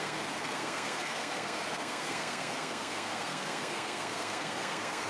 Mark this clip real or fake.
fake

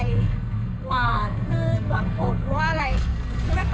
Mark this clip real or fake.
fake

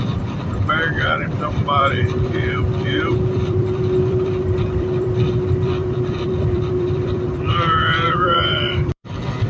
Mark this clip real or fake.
fake